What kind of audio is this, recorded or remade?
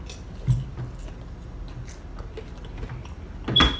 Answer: recorded